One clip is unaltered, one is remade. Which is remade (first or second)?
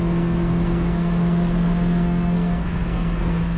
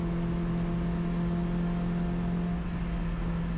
first